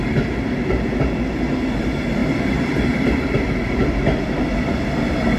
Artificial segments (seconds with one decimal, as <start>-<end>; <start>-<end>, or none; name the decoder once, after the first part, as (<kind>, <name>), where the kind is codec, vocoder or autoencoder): 2.2-5.4 (vocoder, BigVGAN v2)